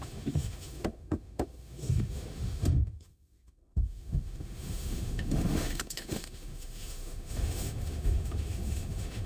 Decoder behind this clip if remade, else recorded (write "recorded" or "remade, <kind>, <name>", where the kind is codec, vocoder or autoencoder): remade, autoencoder, DAC-VAE